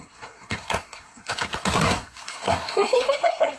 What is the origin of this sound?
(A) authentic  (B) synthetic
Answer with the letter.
B